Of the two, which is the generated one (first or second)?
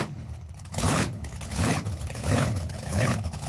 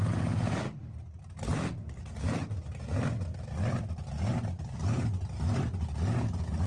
first